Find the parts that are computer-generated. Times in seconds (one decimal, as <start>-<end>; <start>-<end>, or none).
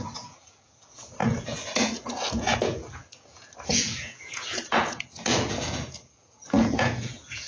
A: 0.0-7.5